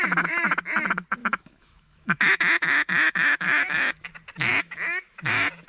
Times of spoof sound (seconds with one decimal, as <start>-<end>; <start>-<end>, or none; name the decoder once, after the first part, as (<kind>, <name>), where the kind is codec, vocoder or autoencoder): 1.2-4.1 (autoencoder, DAC-VAE); 4.5-5.3

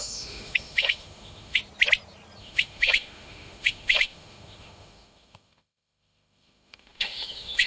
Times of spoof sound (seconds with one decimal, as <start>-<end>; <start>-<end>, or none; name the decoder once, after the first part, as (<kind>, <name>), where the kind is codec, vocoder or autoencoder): 0.0-1.6 (autoencoder, DAC-VAE); 2.4-7.7